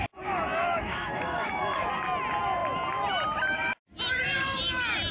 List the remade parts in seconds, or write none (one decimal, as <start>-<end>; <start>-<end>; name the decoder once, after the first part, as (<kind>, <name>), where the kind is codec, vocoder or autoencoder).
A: 0.6-1.9 (autoencoder, DAC-VAE)